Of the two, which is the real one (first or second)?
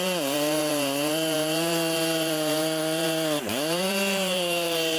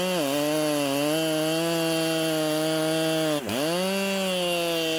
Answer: second